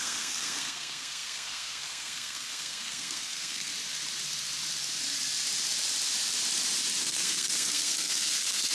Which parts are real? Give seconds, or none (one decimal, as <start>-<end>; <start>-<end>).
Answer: 3.7-7.0